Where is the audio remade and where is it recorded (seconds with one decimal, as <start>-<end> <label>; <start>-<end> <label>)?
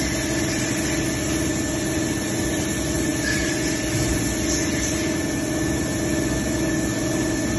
0.0-7.6 recorded